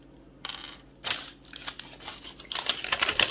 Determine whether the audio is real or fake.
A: real